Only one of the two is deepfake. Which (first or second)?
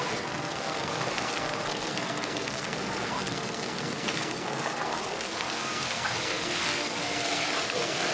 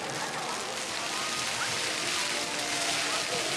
first